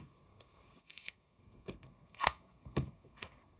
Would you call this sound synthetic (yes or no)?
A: yes